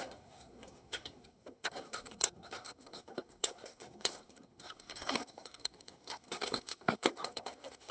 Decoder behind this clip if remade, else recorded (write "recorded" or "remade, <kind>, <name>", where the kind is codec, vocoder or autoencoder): remade, codec, SNAC